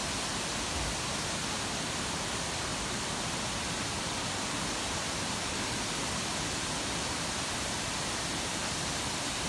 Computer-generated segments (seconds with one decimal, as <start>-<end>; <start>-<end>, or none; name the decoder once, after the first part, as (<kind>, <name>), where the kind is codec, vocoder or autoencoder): none

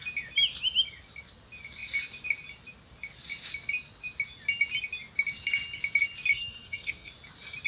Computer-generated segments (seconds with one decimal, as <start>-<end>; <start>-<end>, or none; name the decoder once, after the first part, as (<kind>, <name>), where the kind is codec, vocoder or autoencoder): 6.3-7.1 (codec, SNAC)

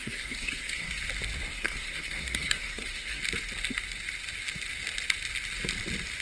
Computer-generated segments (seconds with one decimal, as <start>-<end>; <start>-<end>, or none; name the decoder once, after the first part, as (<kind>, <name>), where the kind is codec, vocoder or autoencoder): 0.0-1.0 (codec, SNAC); 1.5-3.2

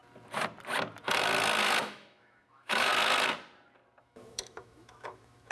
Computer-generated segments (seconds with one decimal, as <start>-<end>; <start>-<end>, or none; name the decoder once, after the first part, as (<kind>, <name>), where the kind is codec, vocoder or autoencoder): 1.8-2.9 (autoencoder, DAC-VAE); 4.0-5.5

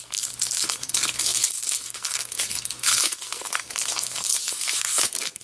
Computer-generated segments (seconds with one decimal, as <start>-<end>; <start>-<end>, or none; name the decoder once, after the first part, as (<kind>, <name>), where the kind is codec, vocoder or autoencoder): 0.0-5.4 (codec, SNAC)